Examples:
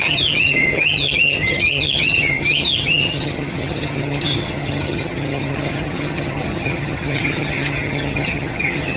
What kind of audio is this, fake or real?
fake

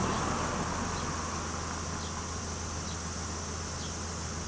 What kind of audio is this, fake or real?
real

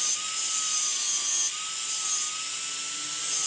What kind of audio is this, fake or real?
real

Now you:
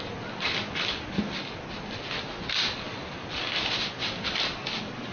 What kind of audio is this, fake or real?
real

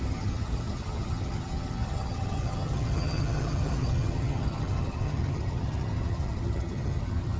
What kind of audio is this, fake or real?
fake